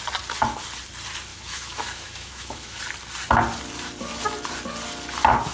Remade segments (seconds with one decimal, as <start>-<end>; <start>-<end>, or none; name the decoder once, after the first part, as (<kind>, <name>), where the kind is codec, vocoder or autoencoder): 1.3-2.8 (autoencoder, DAC-VAE)